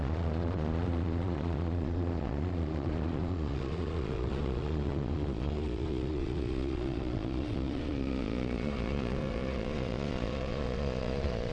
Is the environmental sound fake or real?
fake